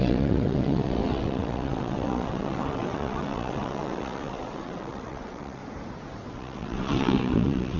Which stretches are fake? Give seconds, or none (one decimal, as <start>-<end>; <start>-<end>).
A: 0.0-5.6; 6.3-7.8